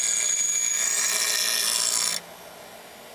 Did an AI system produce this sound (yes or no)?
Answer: no